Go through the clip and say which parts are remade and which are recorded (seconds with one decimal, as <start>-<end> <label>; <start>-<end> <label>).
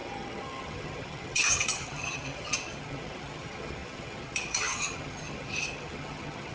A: 0.0-6.5 remade